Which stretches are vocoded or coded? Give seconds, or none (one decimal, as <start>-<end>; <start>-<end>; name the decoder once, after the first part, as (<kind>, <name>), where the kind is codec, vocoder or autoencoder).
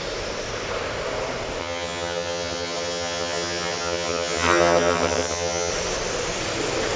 1.6-5.7 (vocoder, HiFi-GAN)